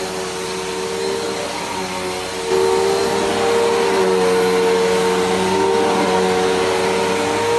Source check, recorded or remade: recorded